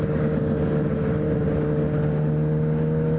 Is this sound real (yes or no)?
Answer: yes